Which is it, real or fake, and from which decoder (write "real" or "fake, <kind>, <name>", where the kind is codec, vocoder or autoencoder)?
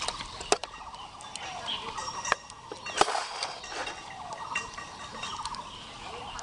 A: real